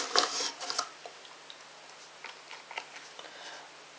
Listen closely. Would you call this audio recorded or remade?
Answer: recorded